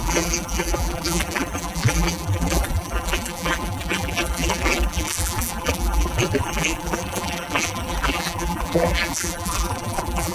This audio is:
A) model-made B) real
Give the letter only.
A